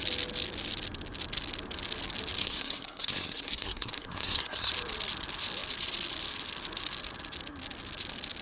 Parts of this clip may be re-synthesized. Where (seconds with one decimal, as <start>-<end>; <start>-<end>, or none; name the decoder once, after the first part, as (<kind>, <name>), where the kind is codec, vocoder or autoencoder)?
2.4-4.7 (codec, SNAC)

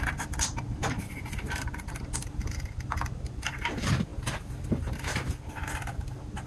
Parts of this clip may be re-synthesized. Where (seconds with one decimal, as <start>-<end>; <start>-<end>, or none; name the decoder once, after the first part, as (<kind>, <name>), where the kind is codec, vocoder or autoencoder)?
none